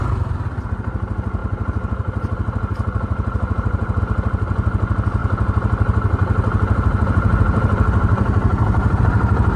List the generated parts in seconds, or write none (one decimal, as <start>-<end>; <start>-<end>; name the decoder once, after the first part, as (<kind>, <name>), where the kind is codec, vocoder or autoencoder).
1.4-4.0 (vocoder, BigVGAN v2); 5.2-9.0